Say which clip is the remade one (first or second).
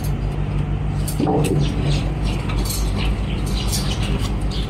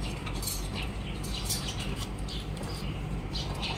second